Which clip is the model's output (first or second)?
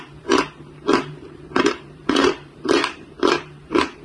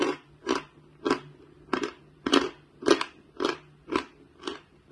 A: first